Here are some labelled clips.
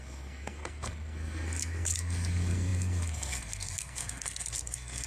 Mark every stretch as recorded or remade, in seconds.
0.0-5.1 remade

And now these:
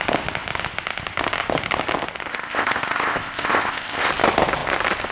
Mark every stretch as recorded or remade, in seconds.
0.0-2.3 recorded; 2.3-4.1 remade; 4.1-5.1 recorded

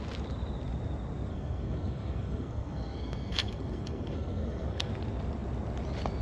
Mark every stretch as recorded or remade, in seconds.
0.0-1.3 recorded; 1.3-4.9 remade; 4.9-6.2 recorded